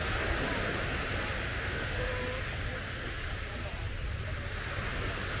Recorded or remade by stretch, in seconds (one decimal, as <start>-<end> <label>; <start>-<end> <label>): 0.0-1.5 recorded; 1.5-2.1 remade; 2.1-5.4 recorded